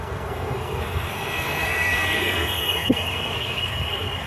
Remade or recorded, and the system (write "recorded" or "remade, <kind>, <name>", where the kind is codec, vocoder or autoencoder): remade, codec, SNAC